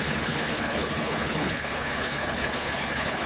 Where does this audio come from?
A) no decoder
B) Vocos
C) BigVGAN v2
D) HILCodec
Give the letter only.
D